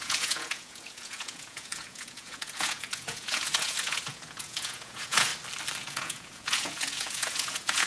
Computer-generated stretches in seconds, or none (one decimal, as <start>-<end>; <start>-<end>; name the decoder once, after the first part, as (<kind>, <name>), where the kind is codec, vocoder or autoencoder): 0.0-5.3 (vocoder, Vocos); 5.8-7.9